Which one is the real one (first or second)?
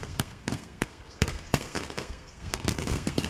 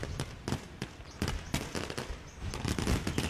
second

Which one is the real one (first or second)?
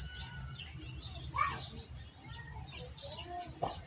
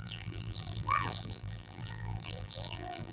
first